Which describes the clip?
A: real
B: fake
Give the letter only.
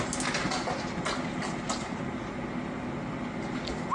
A